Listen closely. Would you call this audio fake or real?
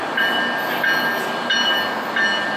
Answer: real